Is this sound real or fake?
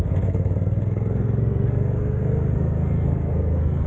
fake